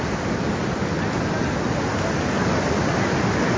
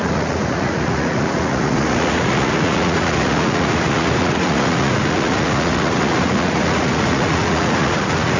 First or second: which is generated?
second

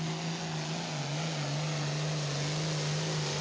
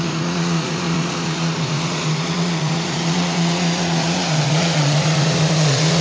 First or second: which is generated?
second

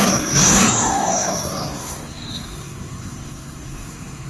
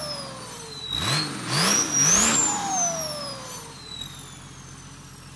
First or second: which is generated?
first